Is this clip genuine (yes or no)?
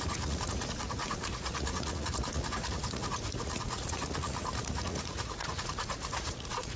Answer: no